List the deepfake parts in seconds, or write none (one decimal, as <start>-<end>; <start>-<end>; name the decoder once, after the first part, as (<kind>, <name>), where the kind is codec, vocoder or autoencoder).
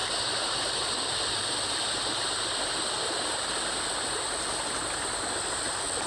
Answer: none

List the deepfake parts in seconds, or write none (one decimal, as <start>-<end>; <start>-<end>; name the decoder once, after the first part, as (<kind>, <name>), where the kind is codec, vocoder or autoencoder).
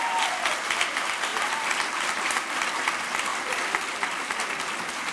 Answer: 1.3-2.7 (vocoder, BigVGAN v2)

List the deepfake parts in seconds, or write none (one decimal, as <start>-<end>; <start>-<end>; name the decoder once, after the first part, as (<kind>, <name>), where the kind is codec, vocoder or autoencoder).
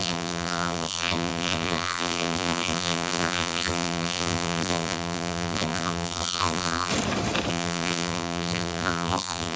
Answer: 0.0-6.9 (vocoder, BigVGAN v2); 7.5-9.6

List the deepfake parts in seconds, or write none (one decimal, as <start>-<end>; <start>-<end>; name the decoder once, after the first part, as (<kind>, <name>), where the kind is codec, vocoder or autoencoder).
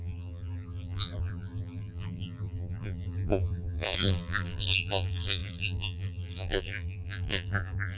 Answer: 0.0-8.0 (vocoder, BigVGAN v2)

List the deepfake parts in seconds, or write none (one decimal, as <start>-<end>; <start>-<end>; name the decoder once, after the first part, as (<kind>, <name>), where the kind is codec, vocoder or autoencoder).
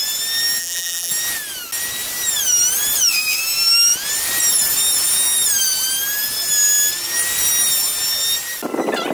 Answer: 0.6-1.1 (vocoder, BigVGAN v2)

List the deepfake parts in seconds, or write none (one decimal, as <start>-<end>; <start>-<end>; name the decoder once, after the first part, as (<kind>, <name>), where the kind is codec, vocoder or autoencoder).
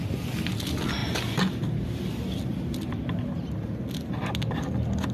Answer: none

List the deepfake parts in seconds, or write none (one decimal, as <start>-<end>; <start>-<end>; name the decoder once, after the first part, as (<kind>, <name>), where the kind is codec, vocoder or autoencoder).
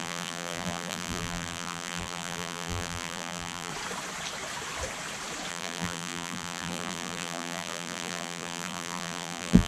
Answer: 0.0-3.7 (vocoder, BigVGAN v2); 5.5-9.7